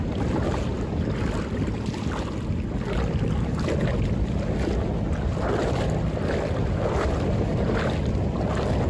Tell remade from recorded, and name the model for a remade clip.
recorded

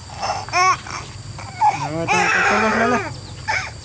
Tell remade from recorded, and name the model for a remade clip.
recorded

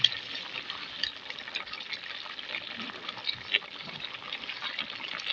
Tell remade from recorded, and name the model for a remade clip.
recorded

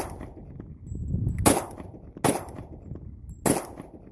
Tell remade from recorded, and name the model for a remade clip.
recorded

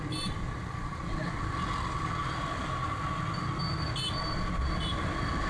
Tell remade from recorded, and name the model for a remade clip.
recorded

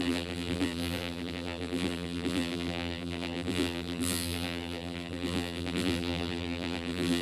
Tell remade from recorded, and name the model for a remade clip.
remade, vocoder, BigVGAN v2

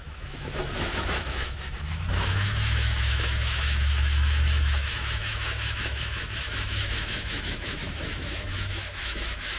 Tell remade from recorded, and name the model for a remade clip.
remade, autoencoder, DAC-VAE